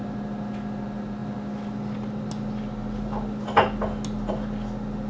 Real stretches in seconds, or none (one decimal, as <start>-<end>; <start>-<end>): 0.0-5.1